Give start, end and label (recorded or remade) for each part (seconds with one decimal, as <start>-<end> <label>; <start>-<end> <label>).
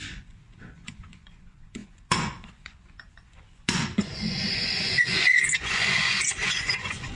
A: 0.0-7.2 remade